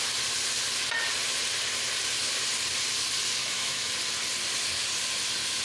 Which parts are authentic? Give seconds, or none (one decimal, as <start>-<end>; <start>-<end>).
0.0-3.4; 3.9-5.6